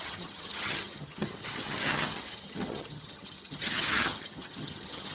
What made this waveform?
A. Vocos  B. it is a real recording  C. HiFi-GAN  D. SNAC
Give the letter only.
C